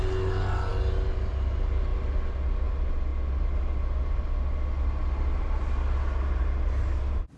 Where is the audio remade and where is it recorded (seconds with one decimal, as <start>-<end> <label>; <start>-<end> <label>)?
0.0-7.4 recorded